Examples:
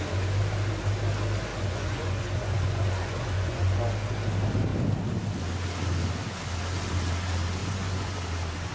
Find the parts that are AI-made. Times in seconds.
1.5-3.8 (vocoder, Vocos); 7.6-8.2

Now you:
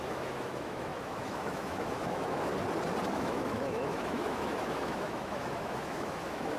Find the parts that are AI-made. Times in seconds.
0.0-2.5 (autoencoder, DAC-VAE); 3.1-6.6

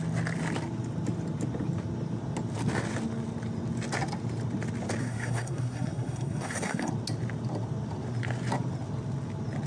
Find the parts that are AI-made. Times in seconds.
5.0-6.9 (codec, SNAC)

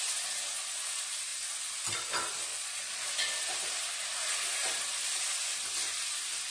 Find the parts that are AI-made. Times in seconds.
2.5-3.1 (vocoder, Vocos)

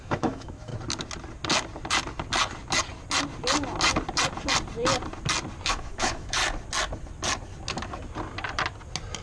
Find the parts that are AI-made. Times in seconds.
0.0-0.7 (autoencoder, DAC-VAE); 5.7-6.4

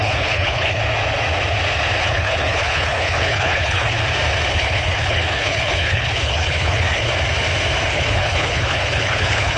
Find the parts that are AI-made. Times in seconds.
0.0-0.8 (codec, HILCodec); 2.0-4.0; 4.5-7.1; 7.9-9.6

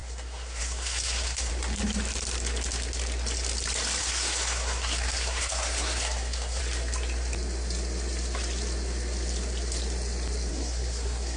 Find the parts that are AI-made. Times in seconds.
0.0-1.5 (codec, SNAC); 4.0-6.6; 10.5-11.4